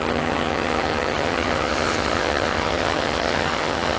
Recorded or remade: remade